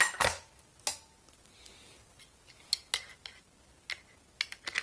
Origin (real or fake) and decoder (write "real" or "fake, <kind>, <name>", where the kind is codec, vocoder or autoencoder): real